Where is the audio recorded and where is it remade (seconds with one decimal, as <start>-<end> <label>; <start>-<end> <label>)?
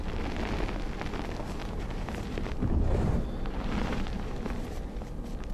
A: 0.0-1.6 recorded; 1.6-4.9 remade; 4.9-5.5 recorded